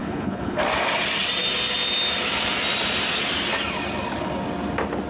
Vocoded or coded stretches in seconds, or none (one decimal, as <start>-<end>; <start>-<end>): 0.0-0.6